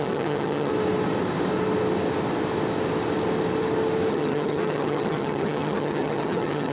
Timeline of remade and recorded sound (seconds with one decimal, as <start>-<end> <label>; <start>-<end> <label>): 0.0-0.7 remade; 0.7-4.1 recorded; 4.1-6.7 remade

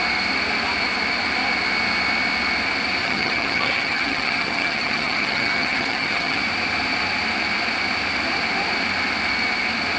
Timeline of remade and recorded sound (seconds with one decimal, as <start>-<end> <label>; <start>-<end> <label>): 0.0-3.0 recorded; 3.0-6.4 remade; 6.4-10.0 recorded

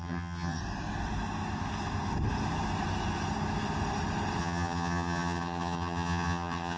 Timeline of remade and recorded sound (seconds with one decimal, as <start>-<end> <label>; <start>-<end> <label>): 0.0-0.6 remade; 0.6-4.4 recorded; 4.4-6.8 remade